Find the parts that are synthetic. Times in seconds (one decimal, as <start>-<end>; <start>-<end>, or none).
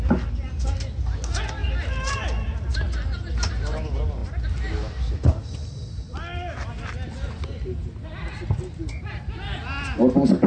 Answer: none